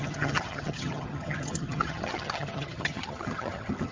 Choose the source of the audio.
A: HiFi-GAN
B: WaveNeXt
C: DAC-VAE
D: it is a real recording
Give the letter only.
A